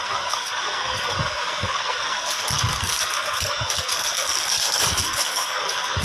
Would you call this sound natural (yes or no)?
no